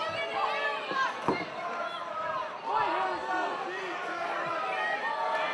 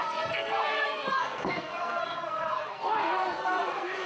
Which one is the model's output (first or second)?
second